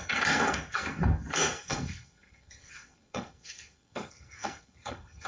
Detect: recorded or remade remade